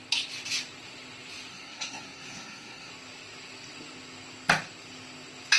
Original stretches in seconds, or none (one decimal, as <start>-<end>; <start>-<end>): 0.0-1.5; 2.9-5.6

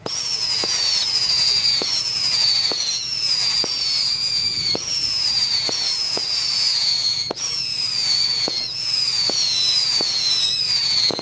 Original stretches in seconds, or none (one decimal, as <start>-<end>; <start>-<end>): none

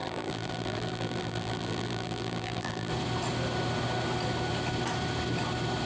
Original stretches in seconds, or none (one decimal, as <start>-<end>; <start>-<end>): 2.9-5.9